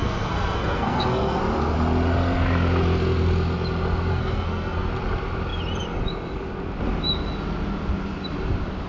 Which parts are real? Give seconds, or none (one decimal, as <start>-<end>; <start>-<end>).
1.4-4.1; 4.9-8.9